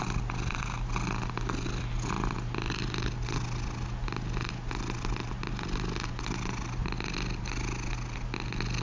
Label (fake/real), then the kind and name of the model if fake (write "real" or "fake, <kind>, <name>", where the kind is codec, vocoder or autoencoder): real